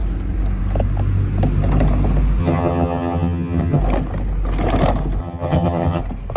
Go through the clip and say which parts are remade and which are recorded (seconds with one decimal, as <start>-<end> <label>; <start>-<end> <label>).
0.0-2.4 recorded; 2.4-3.8 remade; 3.8-5.2 recorded; 5.2-6.0 remade; 6.0-6.4 recorded